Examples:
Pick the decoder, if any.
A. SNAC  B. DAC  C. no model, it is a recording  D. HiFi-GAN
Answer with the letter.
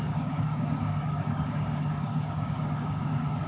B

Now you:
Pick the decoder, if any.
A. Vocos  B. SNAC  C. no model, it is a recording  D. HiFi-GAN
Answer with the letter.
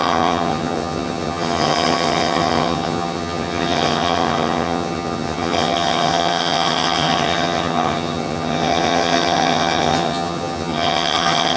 D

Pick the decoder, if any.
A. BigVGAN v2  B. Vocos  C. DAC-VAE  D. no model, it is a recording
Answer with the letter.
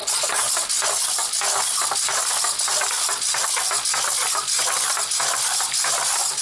D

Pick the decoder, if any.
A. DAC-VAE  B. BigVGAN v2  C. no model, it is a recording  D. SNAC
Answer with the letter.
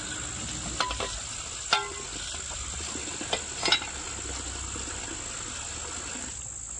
C